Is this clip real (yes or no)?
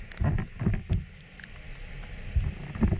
yes